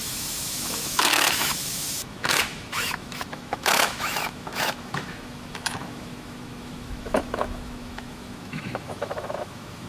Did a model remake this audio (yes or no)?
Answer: yes